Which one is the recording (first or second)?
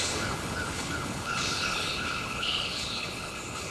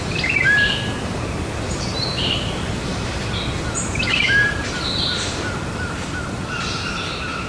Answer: second